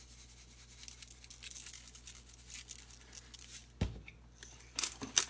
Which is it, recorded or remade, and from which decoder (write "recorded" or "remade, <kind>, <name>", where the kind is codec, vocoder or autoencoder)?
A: recorded